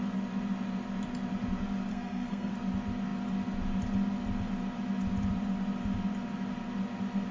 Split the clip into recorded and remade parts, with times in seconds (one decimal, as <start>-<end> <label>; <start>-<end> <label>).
0.0-1.9 recorded; 1.9-2.5 remade; 2.5-7.3 recorded